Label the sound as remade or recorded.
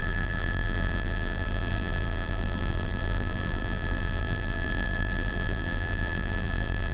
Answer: remade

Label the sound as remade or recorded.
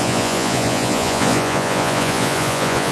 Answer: remade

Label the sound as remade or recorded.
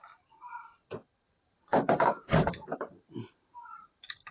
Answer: remade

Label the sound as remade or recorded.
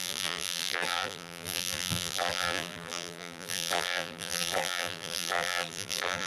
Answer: remade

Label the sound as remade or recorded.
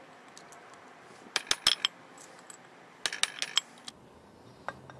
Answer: recorded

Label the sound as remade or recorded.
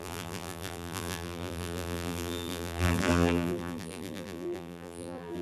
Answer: remade